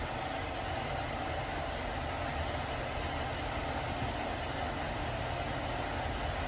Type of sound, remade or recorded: recorded